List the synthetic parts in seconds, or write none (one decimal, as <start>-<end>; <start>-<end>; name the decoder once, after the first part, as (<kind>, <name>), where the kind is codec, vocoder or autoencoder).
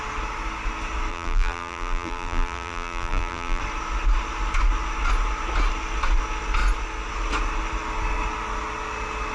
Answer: 1.1-3.6 (vocoder, BigVGAN v2)